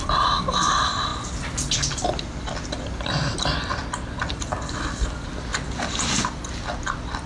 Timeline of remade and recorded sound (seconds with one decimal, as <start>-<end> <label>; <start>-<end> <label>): 0.0-1.1 remade; 1.1-1.7 recorded; 1.7-3.8 remade; 3.8-4.3 recorded; 4.3-7.3 remade

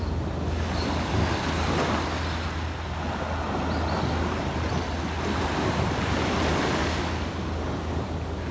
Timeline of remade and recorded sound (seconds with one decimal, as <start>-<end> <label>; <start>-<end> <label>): 0.0-6.8 recorded; 6.8-7.3 remade; 7.3-8.5 recorded